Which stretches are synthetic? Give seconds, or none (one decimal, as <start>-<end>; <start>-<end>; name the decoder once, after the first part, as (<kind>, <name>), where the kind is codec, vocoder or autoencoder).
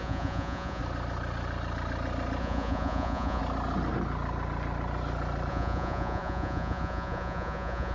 0.0-0.8 (vocoder, Vocos); 2.4-3.4; 5.5-7.9